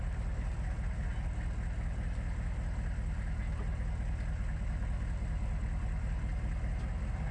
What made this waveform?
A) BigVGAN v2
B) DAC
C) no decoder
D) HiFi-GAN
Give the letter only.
C